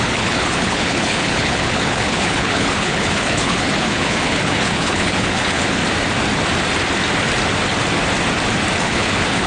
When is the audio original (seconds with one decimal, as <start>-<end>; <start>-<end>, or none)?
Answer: 5.8-8.8